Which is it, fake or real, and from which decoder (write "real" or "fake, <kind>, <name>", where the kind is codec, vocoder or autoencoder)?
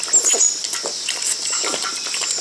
real